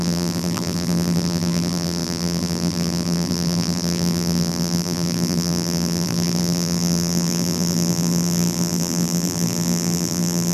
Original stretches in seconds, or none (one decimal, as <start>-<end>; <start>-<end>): none

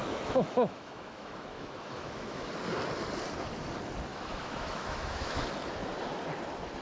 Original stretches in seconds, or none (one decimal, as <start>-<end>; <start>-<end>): 2.5-4.1; 5.4-6.8